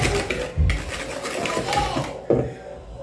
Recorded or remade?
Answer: recorded